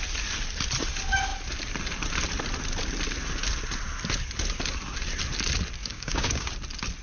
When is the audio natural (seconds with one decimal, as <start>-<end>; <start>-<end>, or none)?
0.0-5.8; 6.5-7.0